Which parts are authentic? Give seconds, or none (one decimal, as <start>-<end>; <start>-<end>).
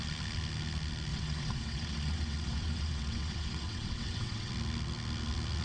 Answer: 0.0-1.1; 4.5-5.6